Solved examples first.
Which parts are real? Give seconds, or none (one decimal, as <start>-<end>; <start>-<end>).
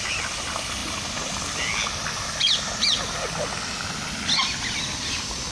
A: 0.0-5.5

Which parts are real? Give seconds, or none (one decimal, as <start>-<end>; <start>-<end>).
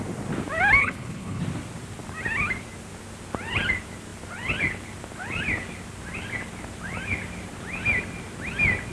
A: 0.0-0.8; 1.4-8.9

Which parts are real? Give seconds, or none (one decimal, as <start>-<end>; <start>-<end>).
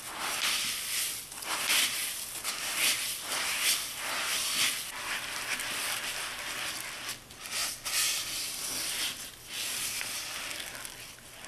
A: 0.0-11.5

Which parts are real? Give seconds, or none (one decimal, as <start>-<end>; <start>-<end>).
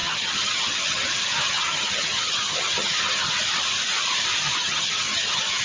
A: 3.4-4.6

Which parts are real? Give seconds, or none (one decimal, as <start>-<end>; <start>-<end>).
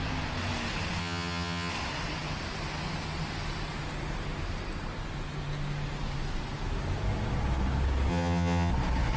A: 0.0-1.0; 1.7-8.1; 8.7-9.2